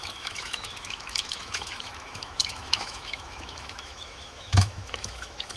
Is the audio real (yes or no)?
no